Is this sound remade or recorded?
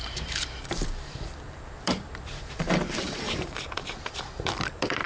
remade